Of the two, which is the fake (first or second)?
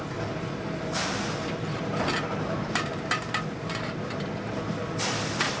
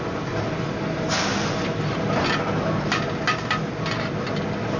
first